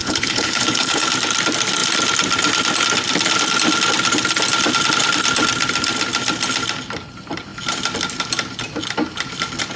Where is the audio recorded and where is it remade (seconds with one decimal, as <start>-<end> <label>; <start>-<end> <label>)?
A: 0.0-1.1 remade; 1.1-9.8 recorded